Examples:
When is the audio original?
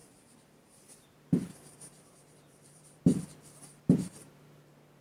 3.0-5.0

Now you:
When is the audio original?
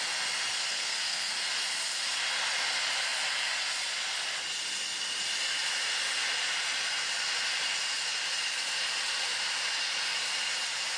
0.0-0.7; 1.3-11.0